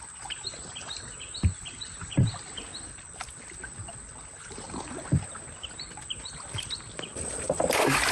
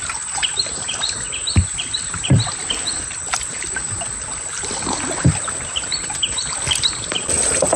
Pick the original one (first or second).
first